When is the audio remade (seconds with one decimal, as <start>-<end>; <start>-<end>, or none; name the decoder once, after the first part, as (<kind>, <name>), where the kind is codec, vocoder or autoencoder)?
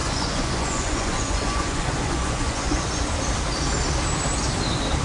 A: 0.0-3.0 (vocoder, Vocos)